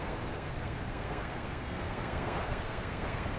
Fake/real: fake